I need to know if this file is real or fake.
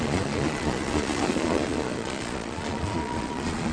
fake